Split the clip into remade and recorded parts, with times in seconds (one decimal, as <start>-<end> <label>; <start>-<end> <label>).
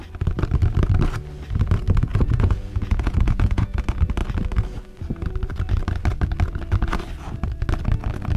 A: 0.0-2.1 recorded; 2.1-3.8 remade; 3.8-8.4 recorded